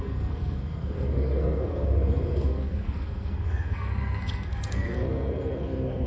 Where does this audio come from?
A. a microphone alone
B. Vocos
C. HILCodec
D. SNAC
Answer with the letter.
D